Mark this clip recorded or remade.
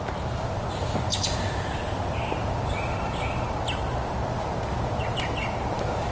recorded